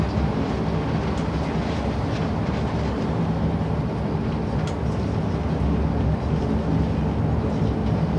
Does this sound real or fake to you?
real